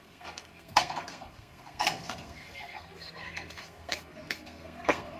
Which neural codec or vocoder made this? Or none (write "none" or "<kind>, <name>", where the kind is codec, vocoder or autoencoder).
codec, SNAC